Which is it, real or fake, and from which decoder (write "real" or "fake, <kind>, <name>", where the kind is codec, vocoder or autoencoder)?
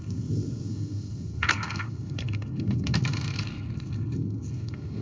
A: fake, codec, SNAC